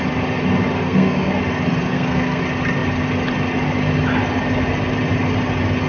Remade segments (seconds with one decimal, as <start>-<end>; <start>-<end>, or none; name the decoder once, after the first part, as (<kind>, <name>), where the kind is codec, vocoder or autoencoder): 0.7-1.4 (codec, SNAC); 1.9-2.4